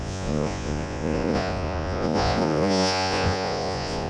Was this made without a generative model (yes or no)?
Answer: no